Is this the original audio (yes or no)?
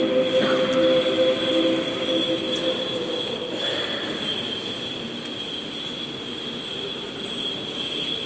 yes